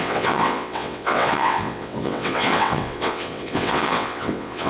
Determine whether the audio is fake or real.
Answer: fake